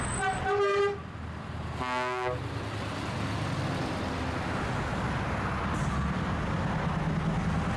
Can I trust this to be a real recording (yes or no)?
yes